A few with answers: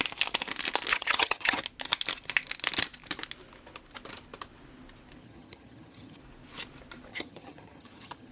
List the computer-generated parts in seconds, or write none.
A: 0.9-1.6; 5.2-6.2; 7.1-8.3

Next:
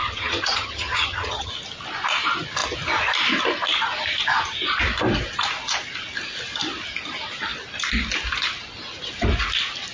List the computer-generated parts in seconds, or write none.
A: 0.0-1.5

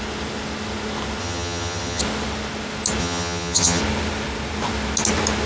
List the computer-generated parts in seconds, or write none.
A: 1.2-2.0; 3.0-3.8

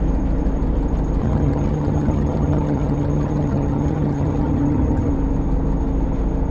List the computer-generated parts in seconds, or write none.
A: 1.2-5.1

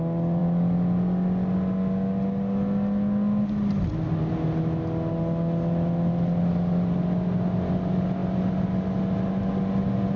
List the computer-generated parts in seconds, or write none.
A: none

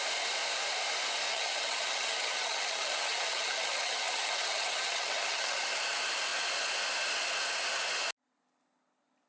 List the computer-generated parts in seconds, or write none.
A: 1.3-5.7